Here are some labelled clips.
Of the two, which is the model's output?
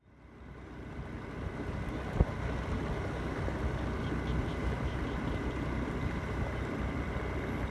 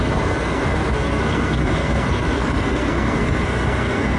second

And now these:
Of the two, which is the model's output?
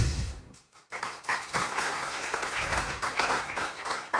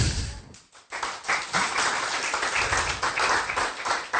first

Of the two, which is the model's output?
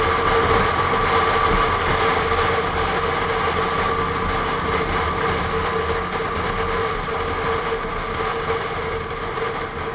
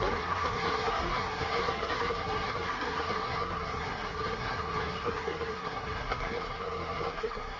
second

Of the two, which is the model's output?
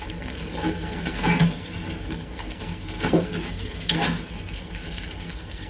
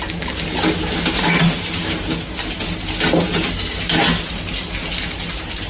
first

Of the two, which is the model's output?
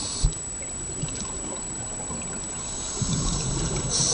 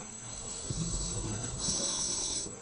second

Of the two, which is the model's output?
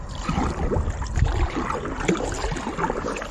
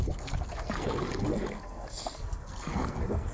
second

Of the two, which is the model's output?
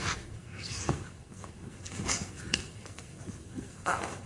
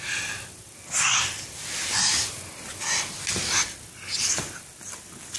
first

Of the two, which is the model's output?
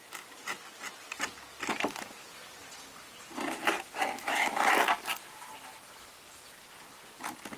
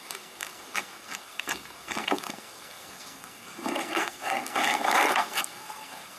second